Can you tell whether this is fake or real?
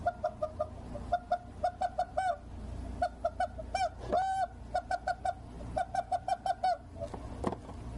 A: real